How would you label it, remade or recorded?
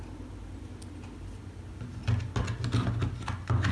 recorded